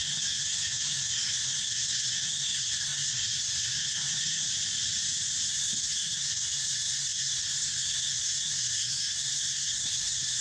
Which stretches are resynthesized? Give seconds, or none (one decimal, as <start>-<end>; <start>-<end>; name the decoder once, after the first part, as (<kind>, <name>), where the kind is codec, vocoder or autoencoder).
0.0-4.5 (codec, SNAC); 5.5-10.4